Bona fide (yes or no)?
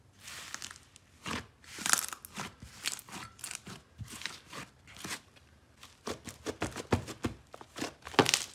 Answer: yes